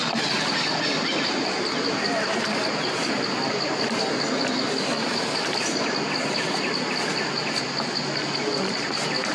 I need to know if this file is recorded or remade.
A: recorded